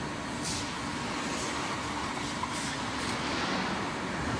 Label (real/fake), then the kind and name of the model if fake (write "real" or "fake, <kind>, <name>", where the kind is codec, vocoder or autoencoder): real